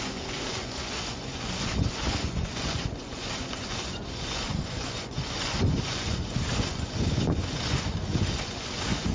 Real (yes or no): no